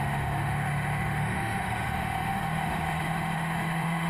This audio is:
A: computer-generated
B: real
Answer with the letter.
A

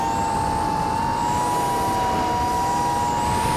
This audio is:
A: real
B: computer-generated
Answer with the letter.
A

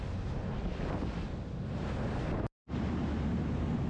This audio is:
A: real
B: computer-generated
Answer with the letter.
A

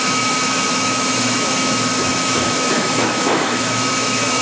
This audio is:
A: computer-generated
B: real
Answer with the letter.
A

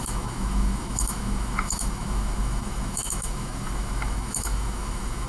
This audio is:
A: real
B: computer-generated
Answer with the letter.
B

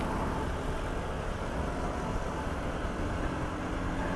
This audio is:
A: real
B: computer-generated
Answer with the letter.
A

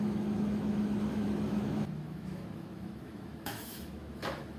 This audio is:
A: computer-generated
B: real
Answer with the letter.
A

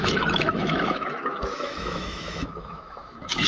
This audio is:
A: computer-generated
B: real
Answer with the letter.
A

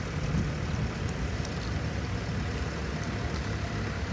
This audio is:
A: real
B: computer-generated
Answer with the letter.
A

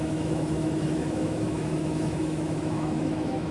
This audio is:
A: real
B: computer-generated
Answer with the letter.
B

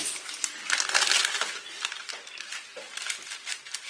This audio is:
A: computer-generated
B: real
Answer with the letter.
B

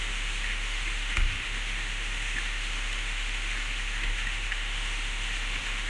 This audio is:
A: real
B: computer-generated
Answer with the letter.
B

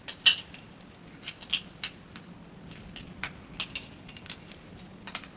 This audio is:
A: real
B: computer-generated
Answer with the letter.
A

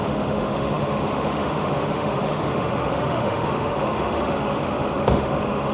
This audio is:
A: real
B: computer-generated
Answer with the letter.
B